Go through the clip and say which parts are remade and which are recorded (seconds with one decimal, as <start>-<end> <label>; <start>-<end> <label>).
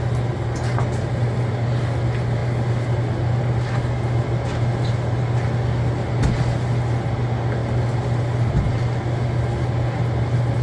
0.0-10.6 recorded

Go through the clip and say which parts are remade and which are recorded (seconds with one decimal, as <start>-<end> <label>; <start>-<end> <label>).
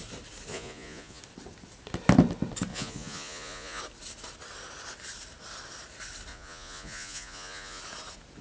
0.0-0.5 recorded; 0.5-1.2 remade; 1.2-2.7 recorded; 2.7-3.8 remade; 3.8-6.3 recorded; 6.3-7.8 remade; 7.8-8.4 recorded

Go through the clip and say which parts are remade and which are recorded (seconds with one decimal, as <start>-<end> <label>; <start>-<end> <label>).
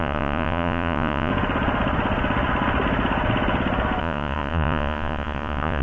0.0-1.3 remade; 1.3-4.0 recorded; 4.0-5.8 remade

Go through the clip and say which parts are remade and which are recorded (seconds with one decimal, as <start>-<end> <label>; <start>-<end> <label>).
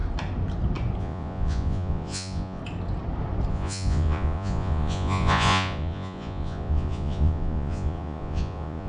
0.0-1.0 recorded; 1.0-2.6 remade; 2.6-3.5 recorded; 3.5-8.9 remade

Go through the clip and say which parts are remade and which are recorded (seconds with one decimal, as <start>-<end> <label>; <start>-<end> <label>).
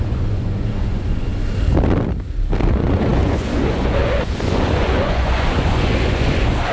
0.0-1.3 remade; 1.3-2.7 recorded; 2.7-6.7 remade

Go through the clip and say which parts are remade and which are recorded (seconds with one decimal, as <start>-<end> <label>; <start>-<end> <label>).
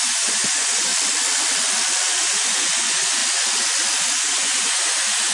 0.0-0.9 remade; 0.9-2.2 recorded; 2.2-3.2 remade; 3.2-4.0 recorded; 4.0-5.3 remade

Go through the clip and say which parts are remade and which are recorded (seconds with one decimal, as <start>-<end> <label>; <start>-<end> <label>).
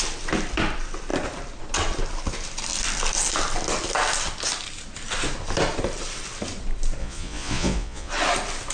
0.0-7.0 recorded; 7.0-8.1 remade; 8.1-8.7 recorded